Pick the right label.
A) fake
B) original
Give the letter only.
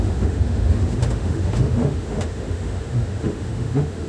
A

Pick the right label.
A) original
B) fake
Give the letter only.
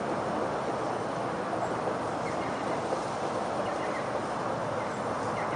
A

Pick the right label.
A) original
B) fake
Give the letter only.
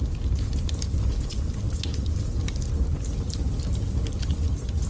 A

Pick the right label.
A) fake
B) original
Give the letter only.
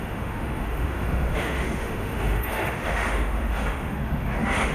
A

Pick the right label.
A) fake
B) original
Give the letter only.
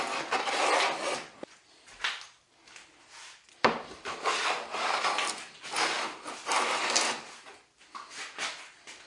B